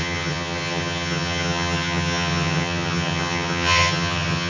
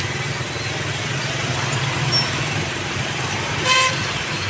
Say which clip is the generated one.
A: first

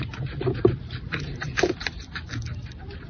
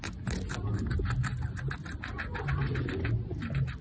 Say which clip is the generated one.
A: first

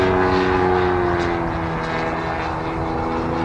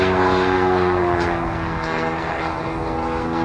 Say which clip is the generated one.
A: second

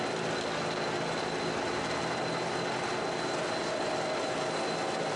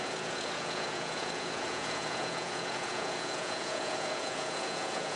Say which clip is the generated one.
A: second